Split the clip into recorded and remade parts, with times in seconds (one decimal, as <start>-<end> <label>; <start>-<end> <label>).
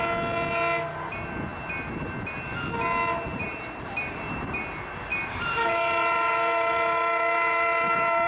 0.0-3.3 recorded; 3.3-4.6 remade; 4.6-5.1 recorded; 5.1-8.3 remade